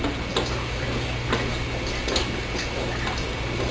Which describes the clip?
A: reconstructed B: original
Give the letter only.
B